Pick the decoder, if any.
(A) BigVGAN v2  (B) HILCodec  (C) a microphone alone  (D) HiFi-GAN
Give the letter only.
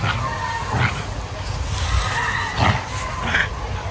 C